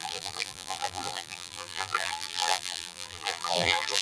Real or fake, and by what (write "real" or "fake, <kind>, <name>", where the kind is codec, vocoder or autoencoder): fake, vocoder, BigVGAN v2